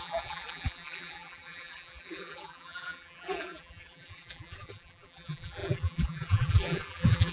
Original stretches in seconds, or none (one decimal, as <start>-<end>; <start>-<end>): none